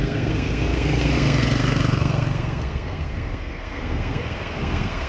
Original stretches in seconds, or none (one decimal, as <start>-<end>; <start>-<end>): none